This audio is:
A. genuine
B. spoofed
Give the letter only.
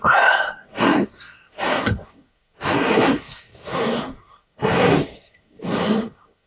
B